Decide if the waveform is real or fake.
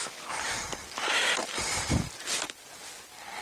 real